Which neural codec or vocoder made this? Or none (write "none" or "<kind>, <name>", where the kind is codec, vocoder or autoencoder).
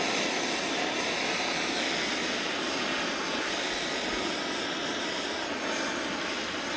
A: none